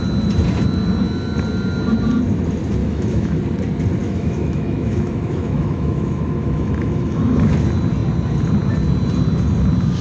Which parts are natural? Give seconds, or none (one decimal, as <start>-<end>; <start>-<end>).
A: 0.0-2.8; 3.4-4.0; 7.5-10.0